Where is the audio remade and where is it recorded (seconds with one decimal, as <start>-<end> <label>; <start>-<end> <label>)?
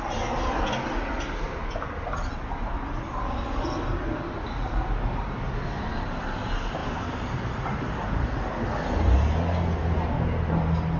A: 0.0-11.0 recorded